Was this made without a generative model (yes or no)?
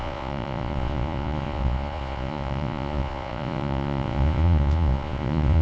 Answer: no